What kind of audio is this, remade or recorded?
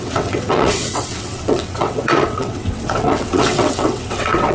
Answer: remade